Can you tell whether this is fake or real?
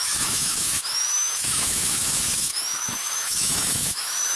fake